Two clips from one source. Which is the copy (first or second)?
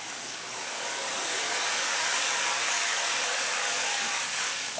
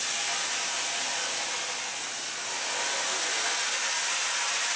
first